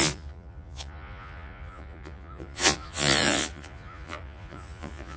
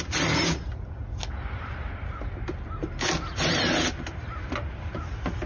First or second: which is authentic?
second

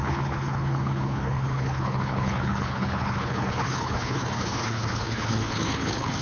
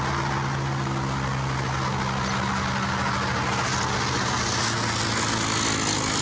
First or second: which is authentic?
second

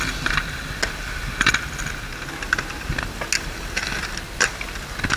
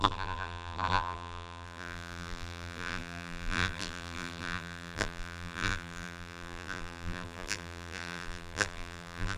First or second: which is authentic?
first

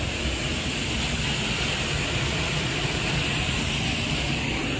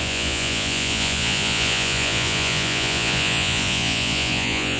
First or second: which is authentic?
first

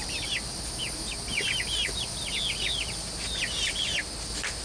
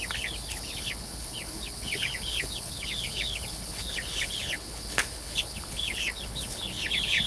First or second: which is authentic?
first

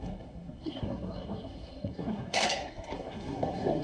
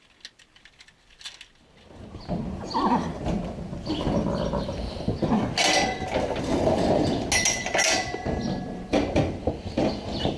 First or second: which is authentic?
second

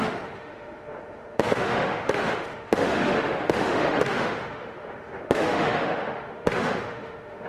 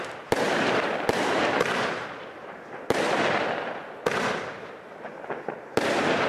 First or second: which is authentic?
second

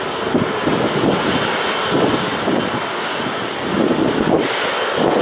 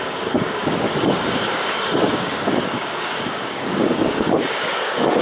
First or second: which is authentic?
first